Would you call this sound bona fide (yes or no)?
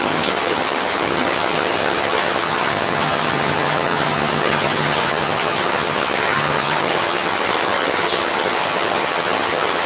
no